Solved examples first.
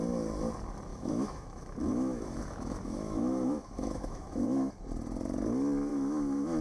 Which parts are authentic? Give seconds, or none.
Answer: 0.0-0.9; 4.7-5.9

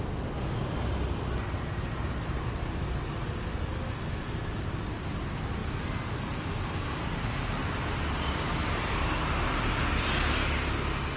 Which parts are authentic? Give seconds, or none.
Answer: 0.0-11.2

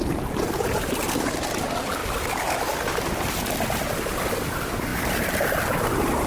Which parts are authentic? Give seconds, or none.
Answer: 0.0-6.3

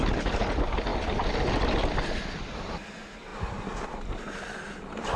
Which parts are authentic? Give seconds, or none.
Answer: 0.0-5.2